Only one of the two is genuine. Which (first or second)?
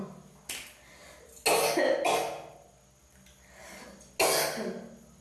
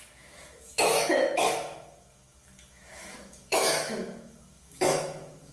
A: first